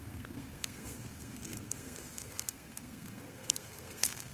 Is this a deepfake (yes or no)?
yes